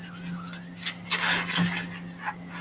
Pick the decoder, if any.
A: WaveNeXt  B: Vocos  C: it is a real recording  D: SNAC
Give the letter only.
C